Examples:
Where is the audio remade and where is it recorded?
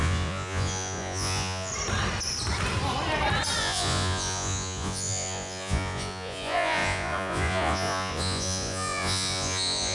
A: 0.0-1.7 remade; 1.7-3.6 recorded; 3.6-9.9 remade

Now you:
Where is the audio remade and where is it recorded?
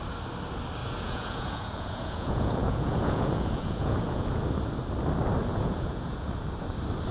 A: 0.0-0.8 recorded; 0.8-4.4 remade; 4.4-5.5 recorded; 5.5-6.3 remade; 6.3-7.1 recorded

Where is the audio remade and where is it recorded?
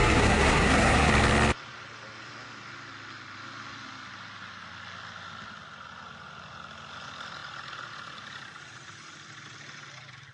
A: 0.0-1.1 remade; 1.1-10.3 recorded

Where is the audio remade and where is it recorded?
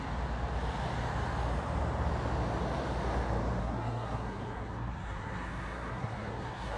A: 0.0-3.6 recorded; 3.6-6.8 remade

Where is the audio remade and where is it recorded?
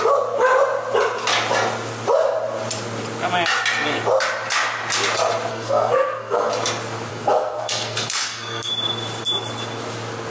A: 0.0-5.5 recorded; 5.5-6.5 remade; 6.5-7.1 recorded; 7.1-8.7 remade; 8.7-10.3 recorded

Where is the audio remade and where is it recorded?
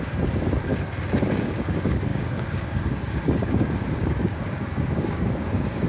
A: 0.0-0.7 remade; 0.7-1.3 recorded; 1.3-5.9 remade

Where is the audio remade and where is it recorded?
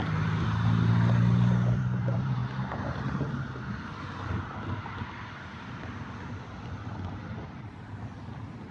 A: 0.0-2.4 remade; 2.4-5.2 recorded; 5.2-8.7 remade